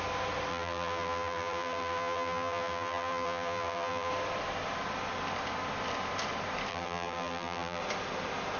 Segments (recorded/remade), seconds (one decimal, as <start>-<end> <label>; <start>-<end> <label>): 0.0-0.5 recorded; 0.5-4.1 remade; 4.1-6.7 recorded; 6.7-7.8 remade; 7.8-8.6 recorded